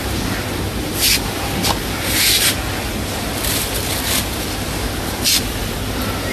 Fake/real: real